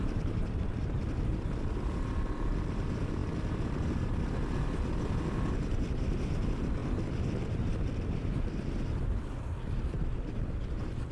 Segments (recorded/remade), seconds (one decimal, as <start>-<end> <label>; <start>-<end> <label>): 0.0-11.1 recorded